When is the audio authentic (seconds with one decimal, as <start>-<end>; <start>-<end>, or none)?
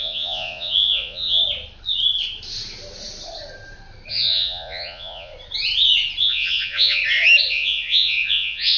1.4-4.1; 5.3-6.2; 7.0-7.5